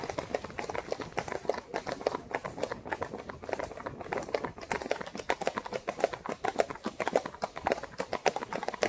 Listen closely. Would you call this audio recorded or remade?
recorded